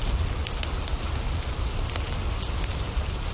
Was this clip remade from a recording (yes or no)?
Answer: no